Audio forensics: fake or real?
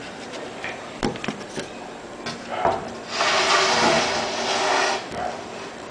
real